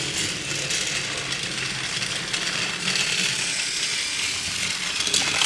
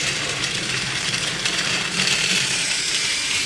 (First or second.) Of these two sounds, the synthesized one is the second